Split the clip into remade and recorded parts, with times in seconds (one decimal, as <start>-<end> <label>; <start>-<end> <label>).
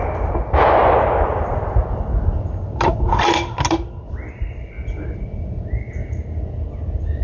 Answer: 0.0-7.2 recorded